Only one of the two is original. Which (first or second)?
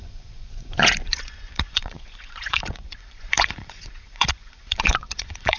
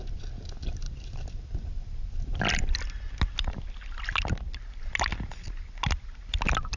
second